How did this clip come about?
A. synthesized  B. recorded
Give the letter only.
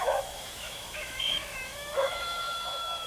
A